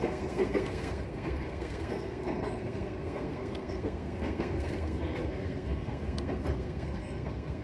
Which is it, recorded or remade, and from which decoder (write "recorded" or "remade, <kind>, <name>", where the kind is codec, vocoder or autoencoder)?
remade, codec, SNAC